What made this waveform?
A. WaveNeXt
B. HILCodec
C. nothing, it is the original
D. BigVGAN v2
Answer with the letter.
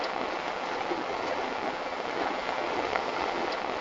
A